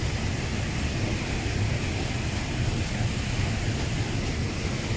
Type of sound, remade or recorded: recorded